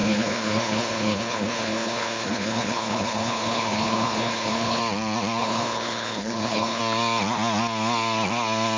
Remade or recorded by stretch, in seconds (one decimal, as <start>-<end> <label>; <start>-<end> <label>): 0.0-4.8 remade; 4.8-5.4 recorded; 5.4-6.8 remade; 6.8-8.8 recorded